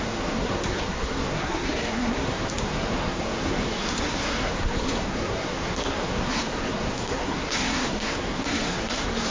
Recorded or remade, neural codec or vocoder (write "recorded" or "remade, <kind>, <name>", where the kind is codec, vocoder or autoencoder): remade, codec, SNAC